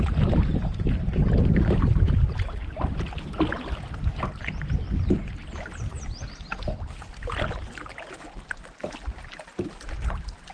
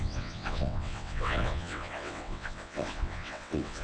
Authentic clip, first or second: first